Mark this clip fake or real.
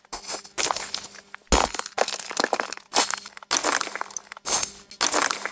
real